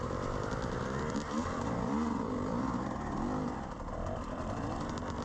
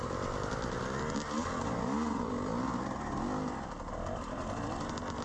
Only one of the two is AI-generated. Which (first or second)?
first